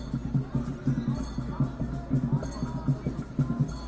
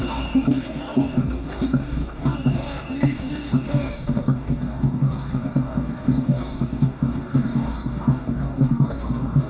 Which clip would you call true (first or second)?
first